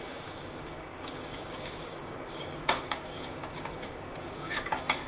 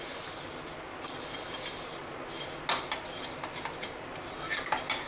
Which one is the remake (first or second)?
first